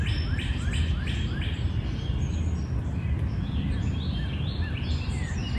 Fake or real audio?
real